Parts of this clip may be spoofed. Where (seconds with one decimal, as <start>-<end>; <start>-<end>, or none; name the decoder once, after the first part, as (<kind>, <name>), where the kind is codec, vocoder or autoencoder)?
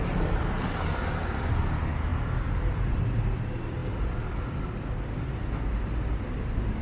none